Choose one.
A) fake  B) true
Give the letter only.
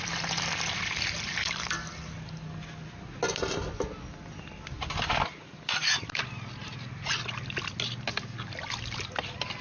B